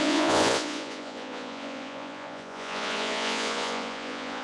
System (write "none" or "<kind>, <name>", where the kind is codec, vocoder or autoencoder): vocoder, Vocos